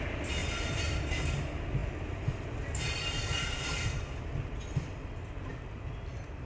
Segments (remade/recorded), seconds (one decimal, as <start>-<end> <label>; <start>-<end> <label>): 0.0-0.4 recorded; 0.4-1.0 remade; 1.0-1.8 recorded; 1.8-4.2 remade; 4.2-6.5 recorded